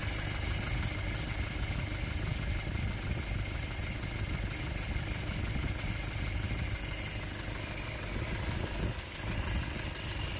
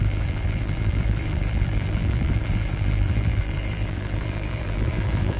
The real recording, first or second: first